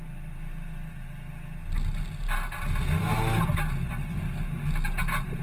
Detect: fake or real real